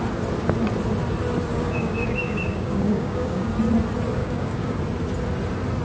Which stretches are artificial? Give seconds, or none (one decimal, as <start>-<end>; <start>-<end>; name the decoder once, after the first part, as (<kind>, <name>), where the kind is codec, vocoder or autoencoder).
1.5-3.5 (codec, DAC); 4.2-4.8